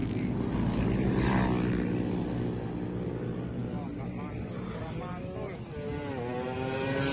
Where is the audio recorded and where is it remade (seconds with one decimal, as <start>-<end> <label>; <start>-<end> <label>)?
0.0-7.1 recorded